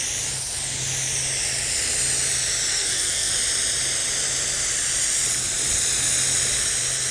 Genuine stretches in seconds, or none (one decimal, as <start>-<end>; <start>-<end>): 0.0-2.7; 3.3-7.1